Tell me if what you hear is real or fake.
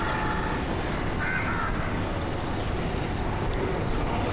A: real